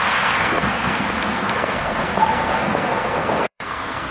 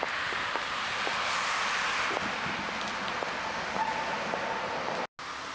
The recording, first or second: second